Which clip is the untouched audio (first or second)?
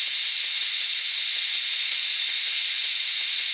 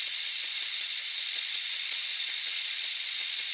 first